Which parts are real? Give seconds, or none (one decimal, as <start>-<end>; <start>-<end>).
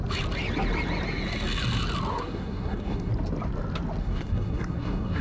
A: 0.0-2.1; 3.1-4.0